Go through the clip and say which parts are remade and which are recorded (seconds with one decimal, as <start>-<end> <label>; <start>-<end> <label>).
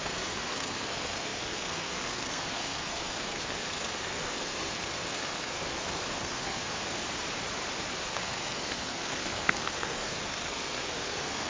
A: 0.0-7.0 remade; 7.0-8.1 recorded; 8.1-11.5 remade